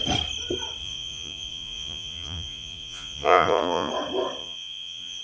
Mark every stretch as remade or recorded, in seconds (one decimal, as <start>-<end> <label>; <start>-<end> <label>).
0.0-0.8 recorded; 0.8-3.9 remade; 3.9-4.4 recorded; 4.4-5.2 remade